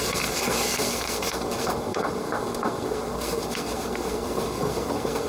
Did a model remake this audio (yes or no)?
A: yes